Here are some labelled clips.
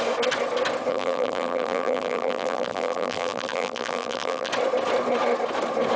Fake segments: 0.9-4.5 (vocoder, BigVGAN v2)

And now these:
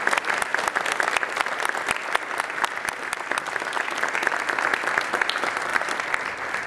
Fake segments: none

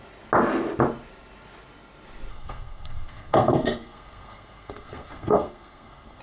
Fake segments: 2.3-6.2 (codec, SNAC)

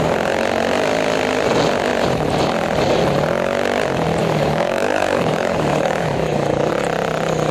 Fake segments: 4.2-6.7 (codec, DAC)